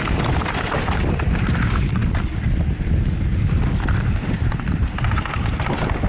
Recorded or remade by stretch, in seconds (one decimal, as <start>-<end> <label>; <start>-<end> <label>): 0.0-6.1 recorded